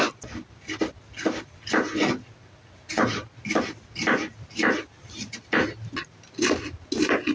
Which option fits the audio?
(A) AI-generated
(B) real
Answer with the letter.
B